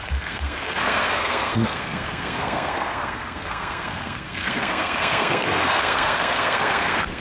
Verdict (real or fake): fake